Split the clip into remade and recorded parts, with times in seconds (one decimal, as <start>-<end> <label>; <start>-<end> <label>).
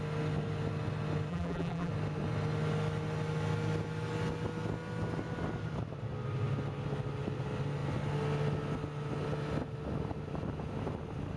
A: 0.0-1.3 recorded; 1.3-1.9 remade; 1.9-11.4 recorded